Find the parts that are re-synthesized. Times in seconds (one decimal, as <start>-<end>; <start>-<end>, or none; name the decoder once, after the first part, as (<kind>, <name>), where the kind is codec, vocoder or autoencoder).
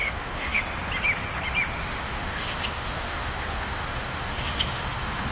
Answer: 0.0-0.6 (autoencoder, DAC-VAE); 1.8-5.3